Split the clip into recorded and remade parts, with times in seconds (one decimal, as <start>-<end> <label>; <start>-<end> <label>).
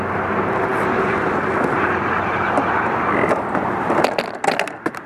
0.0-5.1 recorded